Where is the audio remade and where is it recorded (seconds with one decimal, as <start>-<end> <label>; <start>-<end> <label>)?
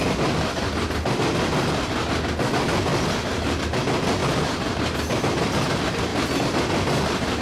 0.0-7.4 recorded